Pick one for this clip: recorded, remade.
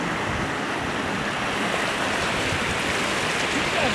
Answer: recorded